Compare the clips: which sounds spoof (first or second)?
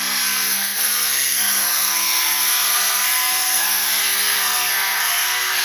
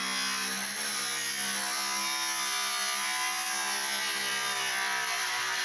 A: first